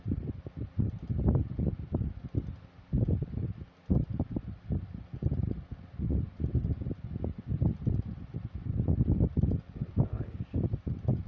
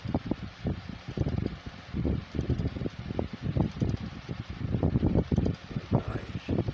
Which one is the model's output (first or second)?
second